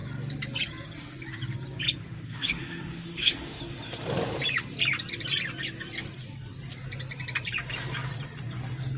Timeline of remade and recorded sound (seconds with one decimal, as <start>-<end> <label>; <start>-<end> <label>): 0.0-2.0 recorded; 2.0-3.6 remade; 3.6-9.0 recorded

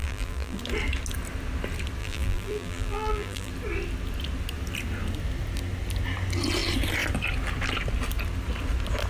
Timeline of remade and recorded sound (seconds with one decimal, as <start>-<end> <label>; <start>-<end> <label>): 0.0-0.6 remade; 0.6-2.0 recorded; 2.0-3.5 remade; 3.5-9.1 recorded

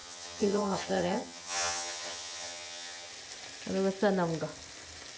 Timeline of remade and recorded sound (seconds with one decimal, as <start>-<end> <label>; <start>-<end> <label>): 0.0-3.1 remade; 3.1-5.2 recorded

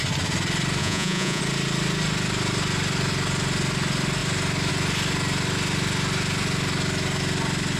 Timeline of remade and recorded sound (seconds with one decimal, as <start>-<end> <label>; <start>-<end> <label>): 0.0-0.8 recorded; 0.8-1.4 remade; 1.4-7.8 recorded